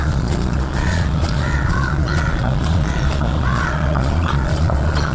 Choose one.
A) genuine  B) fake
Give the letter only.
B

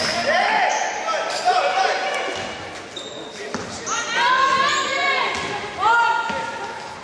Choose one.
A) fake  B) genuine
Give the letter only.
B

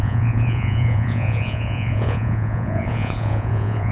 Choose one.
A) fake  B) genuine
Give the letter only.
A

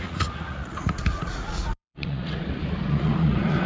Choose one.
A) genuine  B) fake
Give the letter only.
B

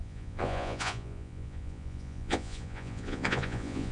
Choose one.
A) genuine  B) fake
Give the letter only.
B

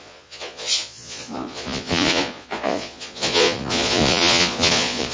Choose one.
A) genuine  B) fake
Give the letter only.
B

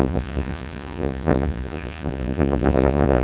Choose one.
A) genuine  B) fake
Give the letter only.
B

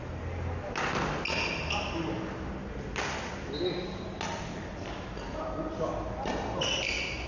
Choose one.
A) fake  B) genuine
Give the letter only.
B